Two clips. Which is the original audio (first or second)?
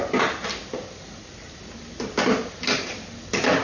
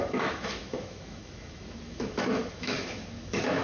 first